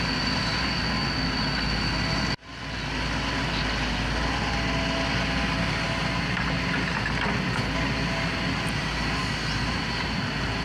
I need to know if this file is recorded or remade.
recorded